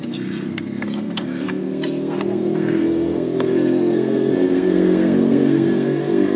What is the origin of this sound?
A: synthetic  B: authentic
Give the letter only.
A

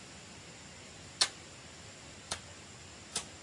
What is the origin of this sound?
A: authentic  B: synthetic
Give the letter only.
A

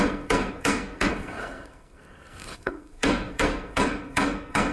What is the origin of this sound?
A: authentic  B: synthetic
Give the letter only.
B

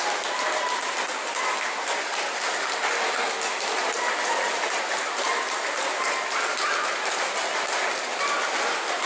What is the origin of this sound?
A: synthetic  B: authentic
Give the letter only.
B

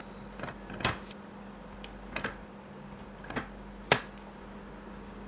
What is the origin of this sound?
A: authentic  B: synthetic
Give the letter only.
A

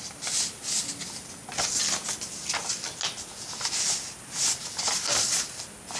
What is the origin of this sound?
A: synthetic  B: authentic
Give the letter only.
B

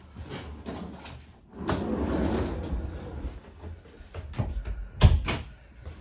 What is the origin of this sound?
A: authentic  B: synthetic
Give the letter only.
A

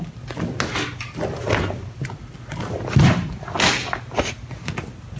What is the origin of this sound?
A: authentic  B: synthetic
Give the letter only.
A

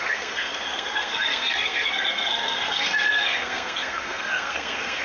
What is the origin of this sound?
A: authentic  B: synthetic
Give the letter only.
B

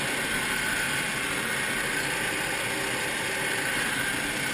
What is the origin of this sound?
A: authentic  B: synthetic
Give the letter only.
A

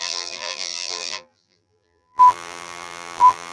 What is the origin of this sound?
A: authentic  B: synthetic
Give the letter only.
B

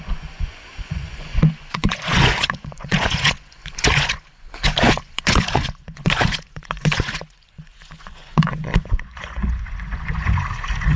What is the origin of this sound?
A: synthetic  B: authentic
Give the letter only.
A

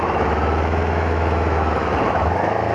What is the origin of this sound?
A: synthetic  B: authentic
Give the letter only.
A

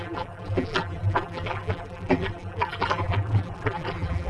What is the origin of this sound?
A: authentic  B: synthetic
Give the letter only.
B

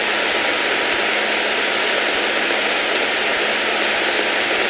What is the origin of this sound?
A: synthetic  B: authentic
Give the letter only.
B